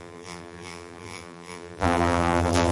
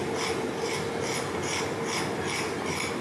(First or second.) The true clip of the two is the second